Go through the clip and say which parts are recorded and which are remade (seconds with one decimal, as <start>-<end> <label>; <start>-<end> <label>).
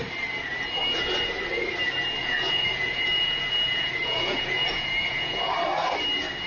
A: 0.0-2.2 recorded; 2.2-5.5 remade; 5.5-6.5 recorded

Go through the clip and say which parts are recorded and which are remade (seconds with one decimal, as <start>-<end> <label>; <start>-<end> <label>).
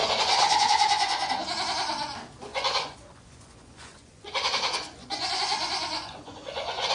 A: 0.0-1.3 remade; 1.3-2.5 recorded; 2.5-6.9 remade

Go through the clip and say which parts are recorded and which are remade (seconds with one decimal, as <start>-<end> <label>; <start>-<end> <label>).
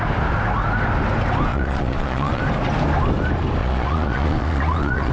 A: 0.0-1.5 recorded; 1.5-2.4 remade; 2.4-3.6 recorded; 3.6-5.1 remade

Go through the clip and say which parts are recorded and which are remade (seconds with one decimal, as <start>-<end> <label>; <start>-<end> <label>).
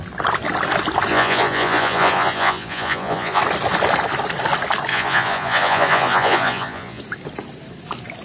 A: 0.0-1.1 recorded; 1.1-3.4 remade; 3.4-4.9 recorded; 4.9-7.0 remade; 7.0-8.2 recorded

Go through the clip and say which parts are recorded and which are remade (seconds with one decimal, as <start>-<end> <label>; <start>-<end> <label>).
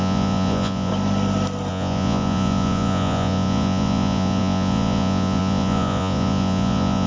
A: 0.0-0.9 remade; 0.9-1.7 recorded; 1.7-7.1 remade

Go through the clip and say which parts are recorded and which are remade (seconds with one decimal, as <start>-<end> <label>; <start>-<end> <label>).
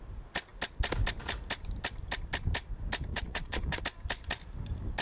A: 0.0-3.1 recorded; 3.1-3.8 remade; 3.8-5.0 recorded